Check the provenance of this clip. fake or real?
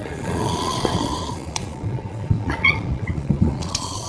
fake